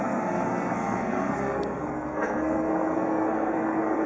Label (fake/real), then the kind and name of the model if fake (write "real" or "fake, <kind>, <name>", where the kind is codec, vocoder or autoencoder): fake, codec, SNAC